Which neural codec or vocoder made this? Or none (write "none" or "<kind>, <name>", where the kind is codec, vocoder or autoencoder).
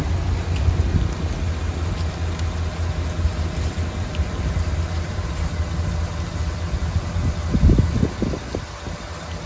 none